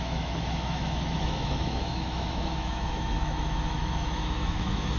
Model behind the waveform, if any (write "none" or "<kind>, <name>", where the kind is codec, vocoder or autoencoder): autoencoder, DAC-VAE